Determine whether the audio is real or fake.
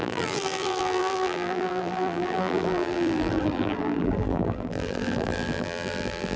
fake